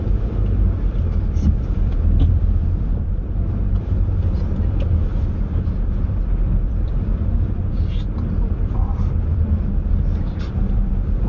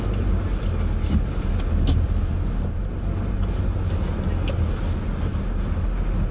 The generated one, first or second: first